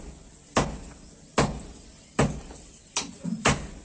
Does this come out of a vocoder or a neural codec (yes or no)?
no